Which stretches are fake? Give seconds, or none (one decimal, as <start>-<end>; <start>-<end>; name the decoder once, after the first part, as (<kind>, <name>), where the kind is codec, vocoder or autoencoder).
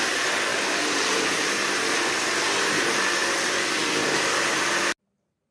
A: 0.5-1.7 (vocoder, BigVGAN v2)